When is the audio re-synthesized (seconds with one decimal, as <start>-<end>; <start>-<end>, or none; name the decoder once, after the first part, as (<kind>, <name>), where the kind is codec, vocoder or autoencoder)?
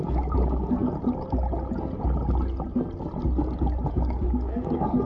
0.0-0.8 (codec, DAC); 3.9-5.1